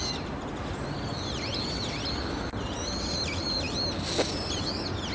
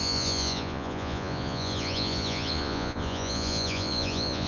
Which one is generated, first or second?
second